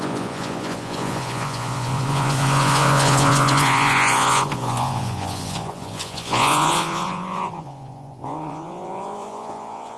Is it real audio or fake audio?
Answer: fake